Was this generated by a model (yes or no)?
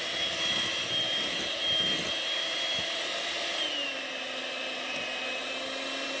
no